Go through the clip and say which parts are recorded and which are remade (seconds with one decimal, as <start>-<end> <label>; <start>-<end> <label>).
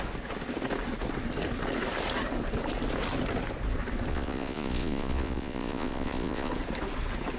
0.0-4.1 recorded; 4.1-6.5 remade; 6.5-7.4 recorded